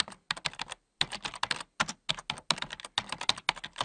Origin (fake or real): real